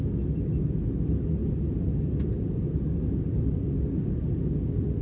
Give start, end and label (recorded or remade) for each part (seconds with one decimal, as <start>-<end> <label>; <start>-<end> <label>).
0.0-5.0 recorded